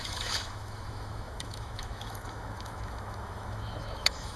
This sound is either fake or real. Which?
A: fake